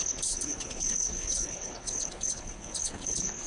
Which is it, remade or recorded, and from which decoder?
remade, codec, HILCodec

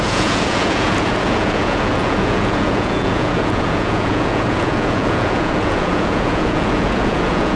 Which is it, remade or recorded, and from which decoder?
remade, vocoder, Vocos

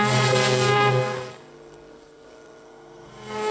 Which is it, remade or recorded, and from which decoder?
remade, codec, SNAC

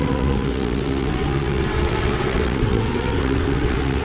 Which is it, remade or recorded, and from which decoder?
remade, vocoder, WaveNeXt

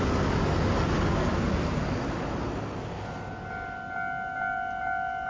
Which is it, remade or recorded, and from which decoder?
recorded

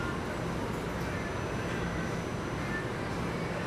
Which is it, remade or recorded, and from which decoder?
recorded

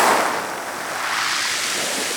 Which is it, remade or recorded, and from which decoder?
recorded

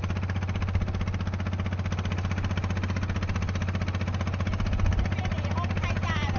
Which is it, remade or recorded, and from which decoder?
recorded